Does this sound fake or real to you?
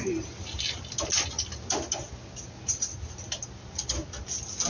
real